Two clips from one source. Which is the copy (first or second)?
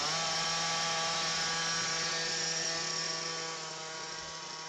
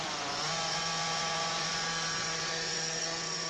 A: second